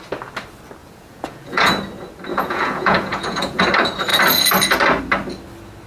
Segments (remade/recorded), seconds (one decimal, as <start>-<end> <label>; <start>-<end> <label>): 0.0-0.8 recorded; 0.8-1.7 remade; 1.7-2.3 recorded; 2.3-3.6 remade; 3.6-5.9 recorded